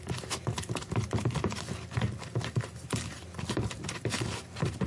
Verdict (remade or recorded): recorded